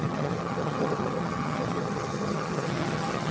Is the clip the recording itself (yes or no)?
no